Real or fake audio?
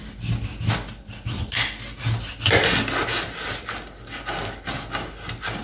real